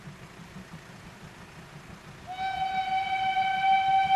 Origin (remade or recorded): recorded